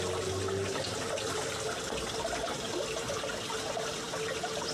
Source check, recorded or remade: recorded